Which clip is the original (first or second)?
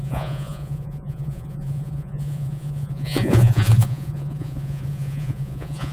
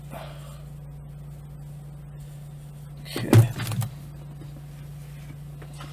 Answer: second